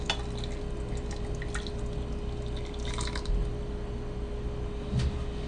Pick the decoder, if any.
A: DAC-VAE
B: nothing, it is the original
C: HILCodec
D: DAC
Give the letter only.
B